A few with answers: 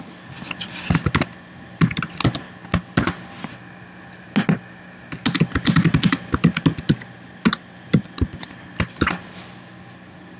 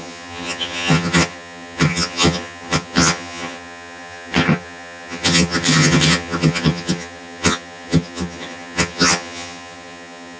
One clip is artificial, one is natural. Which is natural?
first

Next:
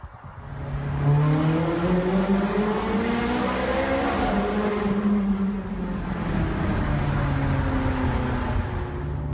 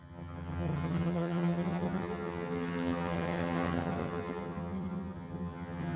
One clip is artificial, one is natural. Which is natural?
first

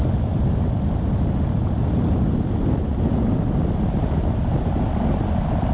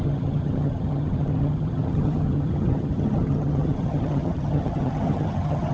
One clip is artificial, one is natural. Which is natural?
first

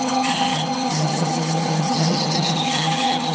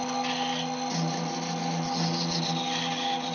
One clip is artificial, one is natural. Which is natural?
second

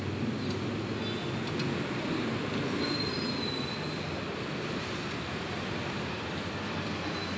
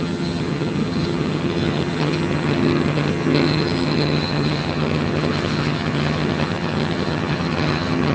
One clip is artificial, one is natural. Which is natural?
first